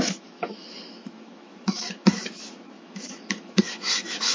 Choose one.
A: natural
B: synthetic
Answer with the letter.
B